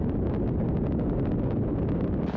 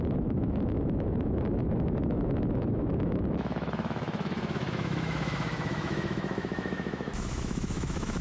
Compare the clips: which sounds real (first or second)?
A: first